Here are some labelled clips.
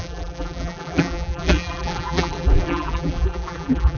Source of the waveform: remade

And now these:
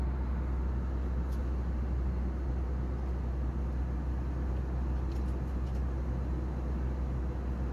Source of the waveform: recorded